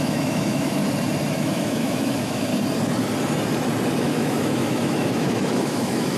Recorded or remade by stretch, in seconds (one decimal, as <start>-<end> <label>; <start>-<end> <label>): 0.0-0.8 remade; 0.8-1.4 recorded; 1.4-2.5 remade; 2.5-4.0 recorded; 4.0-6.2 remade